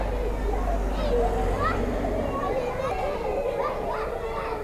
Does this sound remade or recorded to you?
recorded